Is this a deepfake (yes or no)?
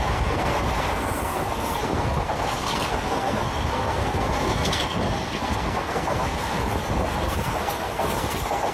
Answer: yes